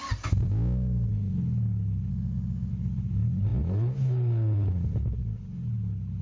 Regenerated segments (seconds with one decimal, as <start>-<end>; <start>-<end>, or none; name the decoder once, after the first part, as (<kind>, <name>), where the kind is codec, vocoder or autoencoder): 1.1-2.1 (codec, HILCodec); 2.7-6.2

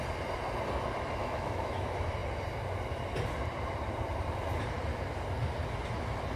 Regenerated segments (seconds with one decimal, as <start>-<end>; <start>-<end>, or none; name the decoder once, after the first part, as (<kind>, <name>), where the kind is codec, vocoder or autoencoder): 1.2-1.8 (autoencoder, DAC-VAE)

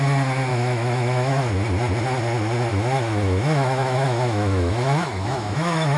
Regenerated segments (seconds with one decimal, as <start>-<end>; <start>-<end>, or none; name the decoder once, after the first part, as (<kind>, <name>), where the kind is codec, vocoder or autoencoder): 0.5-1.5 (autoencoder, DAC-VAE); 2.7-6.0

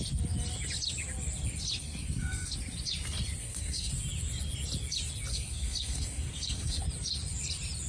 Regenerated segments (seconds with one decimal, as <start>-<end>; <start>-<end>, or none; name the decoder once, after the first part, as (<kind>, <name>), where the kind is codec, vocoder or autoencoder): 1.8-2.5 (codec, SNAC); 3.4-3.9; 5.3-6.8

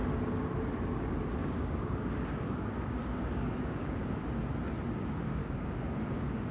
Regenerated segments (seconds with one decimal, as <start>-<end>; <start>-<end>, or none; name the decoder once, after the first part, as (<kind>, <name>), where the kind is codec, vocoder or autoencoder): 1.4-4.1 (codec, DAC); 5.4-6.5